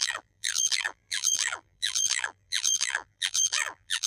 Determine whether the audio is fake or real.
fake